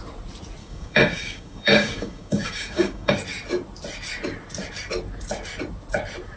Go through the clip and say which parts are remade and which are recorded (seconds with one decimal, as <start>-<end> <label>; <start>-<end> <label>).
0.0-0.6 recorded; 0.6-3.1 remade; 3.1-6.4 recorded